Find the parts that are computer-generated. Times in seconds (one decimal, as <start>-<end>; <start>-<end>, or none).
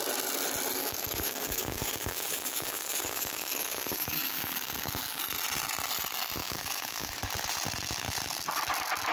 0.8-5.2; 6.4-7.1